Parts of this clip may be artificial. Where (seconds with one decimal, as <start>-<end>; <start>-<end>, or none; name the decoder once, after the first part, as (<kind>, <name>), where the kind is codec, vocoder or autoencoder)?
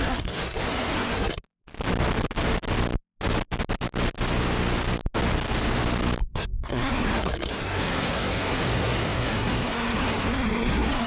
0.0-1.4 (codec, SNAC); 6.2-11.1